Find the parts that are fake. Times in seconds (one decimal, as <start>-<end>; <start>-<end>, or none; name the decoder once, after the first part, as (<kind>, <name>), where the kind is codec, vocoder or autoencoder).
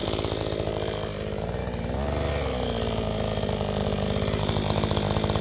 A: none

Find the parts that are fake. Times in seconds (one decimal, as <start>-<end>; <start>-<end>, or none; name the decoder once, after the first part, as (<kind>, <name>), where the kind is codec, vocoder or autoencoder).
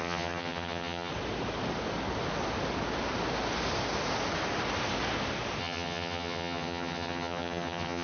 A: 0.0-1.1 (vocoder, HiFi-GAN); 5.6-8.0